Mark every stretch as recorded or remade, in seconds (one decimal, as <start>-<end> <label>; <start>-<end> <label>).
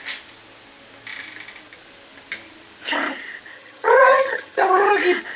0.0-3.5 recorded; 3.5-4.9 remade; 4.9-5.4 recorded